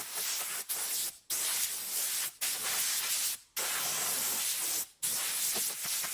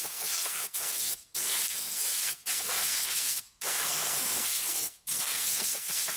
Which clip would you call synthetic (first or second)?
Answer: second